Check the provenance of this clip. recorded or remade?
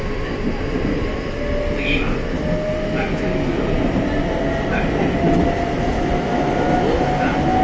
recorded